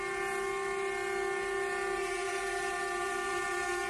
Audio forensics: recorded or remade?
recorded